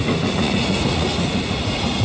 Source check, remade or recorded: remade